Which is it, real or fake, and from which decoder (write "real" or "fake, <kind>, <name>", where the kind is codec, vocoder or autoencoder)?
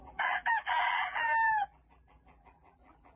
fake, vocoder, BigVGAN v2